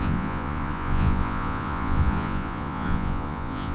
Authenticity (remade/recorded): remade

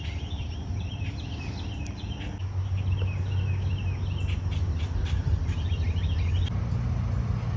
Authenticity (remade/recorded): recorded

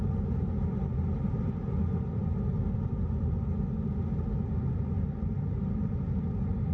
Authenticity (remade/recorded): recorded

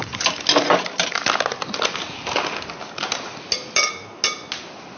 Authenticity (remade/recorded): recorded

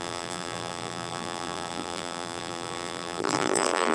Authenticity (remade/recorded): remade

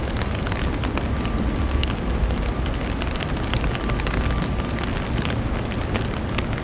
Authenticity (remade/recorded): recorded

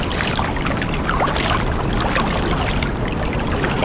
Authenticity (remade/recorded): recorded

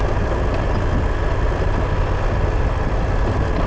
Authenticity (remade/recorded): recorded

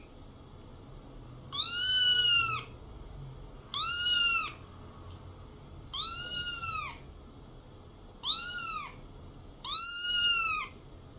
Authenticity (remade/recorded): recorded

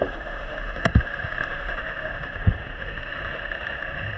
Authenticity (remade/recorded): remade